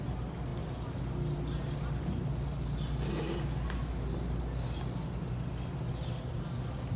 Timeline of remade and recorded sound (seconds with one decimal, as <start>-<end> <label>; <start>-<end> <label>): 0.0-7.0 recorded